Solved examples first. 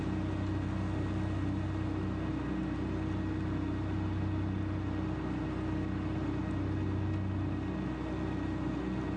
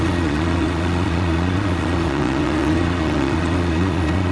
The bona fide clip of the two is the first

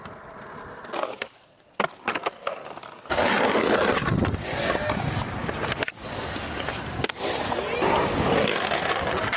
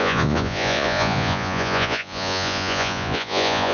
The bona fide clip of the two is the first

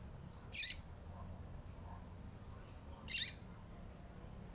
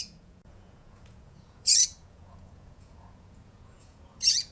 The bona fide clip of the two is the first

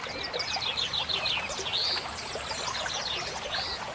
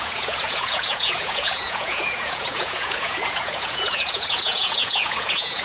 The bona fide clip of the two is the first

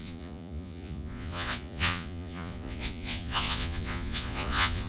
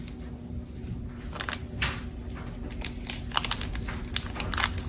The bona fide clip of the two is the second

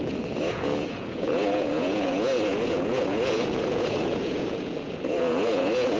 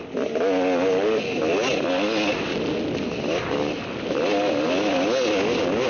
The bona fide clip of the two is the second